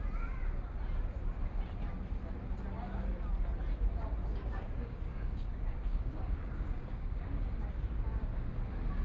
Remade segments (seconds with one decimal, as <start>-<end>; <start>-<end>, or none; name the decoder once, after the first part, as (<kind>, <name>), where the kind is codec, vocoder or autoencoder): 4.2-8.5 (codec, DAC)